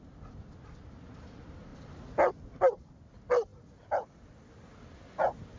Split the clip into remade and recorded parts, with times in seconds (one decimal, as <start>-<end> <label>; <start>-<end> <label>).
0.0-5.6 recorded

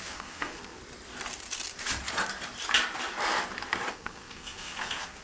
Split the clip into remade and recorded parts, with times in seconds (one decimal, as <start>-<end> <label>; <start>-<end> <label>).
0.0-0.8 remade; 0.8-3.9 recorded; 3.9-5.2 remade

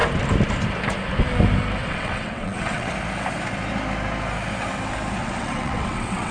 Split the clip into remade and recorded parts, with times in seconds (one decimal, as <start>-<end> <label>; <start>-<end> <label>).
0.0-1.8 recorded; 1.8-2.9 remade; 2.9-5.2 recorded; 5.2-6.3 remade

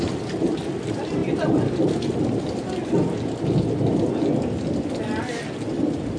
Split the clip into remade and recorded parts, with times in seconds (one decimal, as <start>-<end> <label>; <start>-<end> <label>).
0.0-6.2 recorded